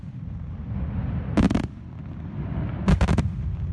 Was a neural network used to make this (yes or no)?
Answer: no